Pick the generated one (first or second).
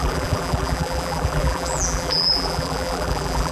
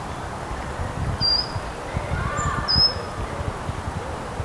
first